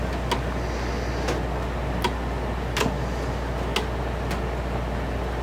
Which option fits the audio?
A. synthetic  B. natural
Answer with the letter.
B